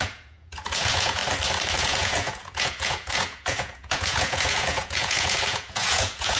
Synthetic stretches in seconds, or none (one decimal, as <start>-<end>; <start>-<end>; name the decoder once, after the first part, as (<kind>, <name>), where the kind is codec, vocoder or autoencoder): 0.0-1.2 (vocoder, Vocos); 1.7-6.4